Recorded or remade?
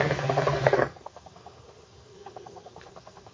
remade